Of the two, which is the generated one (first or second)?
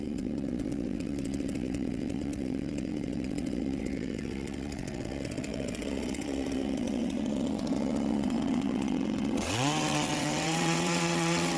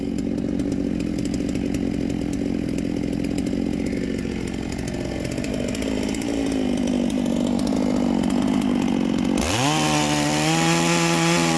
first